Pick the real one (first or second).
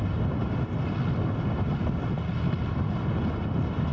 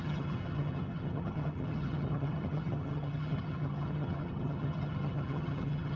first